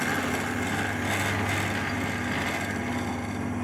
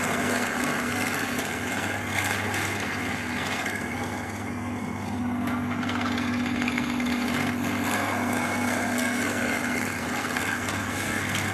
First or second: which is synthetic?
second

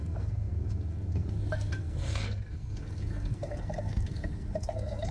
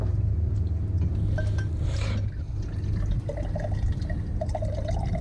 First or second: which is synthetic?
first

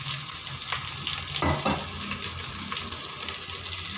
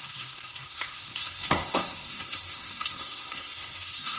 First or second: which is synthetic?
second